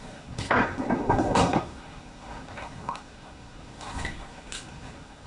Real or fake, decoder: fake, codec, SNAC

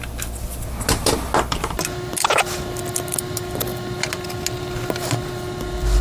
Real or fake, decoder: real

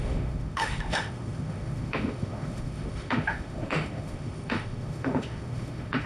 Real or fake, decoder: fake, autoencoder, DAC-VAE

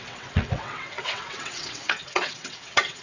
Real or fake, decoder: fake, vocoder, WaveNeXt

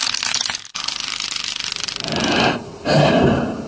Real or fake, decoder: real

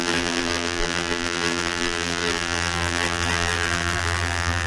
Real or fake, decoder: fake, vocoder, BigVGAN v2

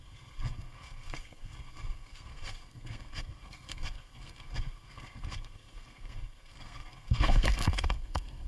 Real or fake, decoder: fake, codec, SNAC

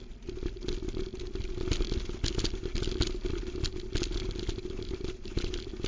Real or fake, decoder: real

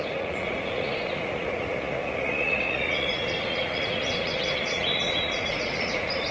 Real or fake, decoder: fake, vocoder, Vocos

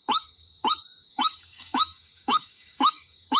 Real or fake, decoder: fake, codec, DAC